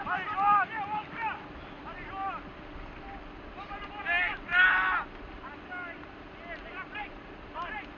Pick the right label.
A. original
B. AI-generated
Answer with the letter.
A